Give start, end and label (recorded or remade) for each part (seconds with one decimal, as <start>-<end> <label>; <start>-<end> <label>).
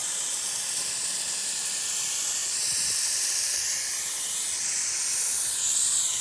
0.0-1.4 recorded; 1.4-2.4 remade; 2.4-6.2 recorded